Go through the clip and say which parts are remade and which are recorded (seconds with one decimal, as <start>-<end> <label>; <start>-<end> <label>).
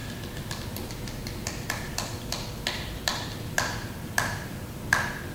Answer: 0.0-0.6 recorded; 0.6-5.3 remade